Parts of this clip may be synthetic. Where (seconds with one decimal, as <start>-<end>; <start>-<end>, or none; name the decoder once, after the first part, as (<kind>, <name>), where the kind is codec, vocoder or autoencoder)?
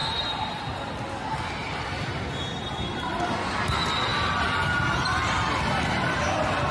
0.0-0.9 (vocoder, BigVGAN v2); 1.6-3.3; 4.1-6.3